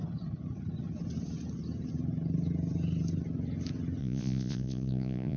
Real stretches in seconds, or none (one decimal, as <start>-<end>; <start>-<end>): 0.0-4.0